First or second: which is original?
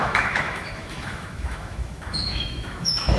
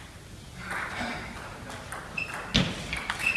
second